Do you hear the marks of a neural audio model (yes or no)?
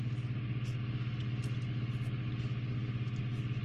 no